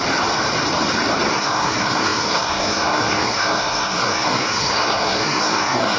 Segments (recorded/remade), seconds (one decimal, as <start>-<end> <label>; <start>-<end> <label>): 0.0-1.3 recorded; 1.3-6.0 remade